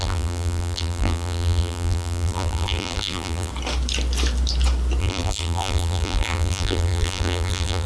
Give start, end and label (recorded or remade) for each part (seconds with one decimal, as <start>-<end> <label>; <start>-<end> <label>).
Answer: 0.0-3.5 remade; 3.5-5.0 recorded; 5.0-7.9 remade